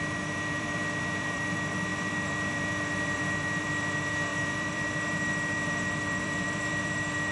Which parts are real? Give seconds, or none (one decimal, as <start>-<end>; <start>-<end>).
none